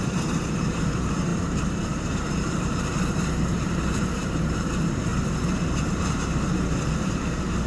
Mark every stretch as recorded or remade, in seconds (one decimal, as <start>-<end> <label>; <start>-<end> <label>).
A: 0.0-5.1 remade; 5.1-6.0 recorded; 6.0-7.7 remade